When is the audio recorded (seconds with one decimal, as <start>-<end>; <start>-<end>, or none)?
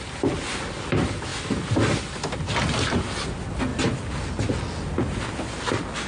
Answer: 0.0-6.1